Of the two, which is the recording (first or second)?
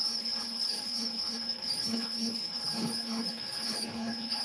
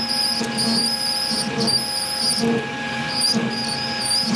second